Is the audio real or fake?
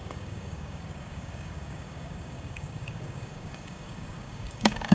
fake